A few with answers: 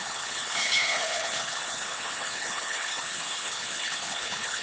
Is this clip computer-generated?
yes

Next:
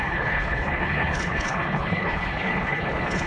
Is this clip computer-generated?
yes